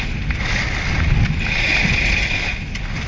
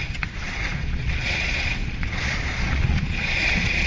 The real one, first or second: first